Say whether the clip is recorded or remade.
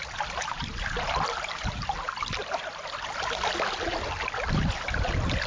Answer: recorded